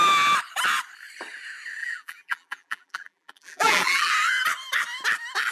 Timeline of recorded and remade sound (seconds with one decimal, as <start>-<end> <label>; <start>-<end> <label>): 0.0-1.8 recorded; 1.8-4.1 remade; 4.1-5.5 recorded